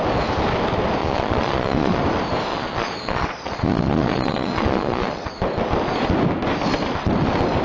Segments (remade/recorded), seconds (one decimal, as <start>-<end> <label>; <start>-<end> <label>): 0.0-1.0 recorded; 1.0-2.0 remade; 2.0-2.5 recorded; 2.5-5.3 remade; 5.3-7.6 recorded